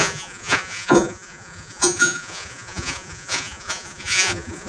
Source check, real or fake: fake